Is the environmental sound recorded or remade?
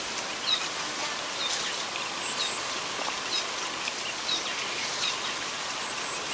recorded